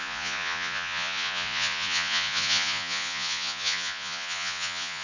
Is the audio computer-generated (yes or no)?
yes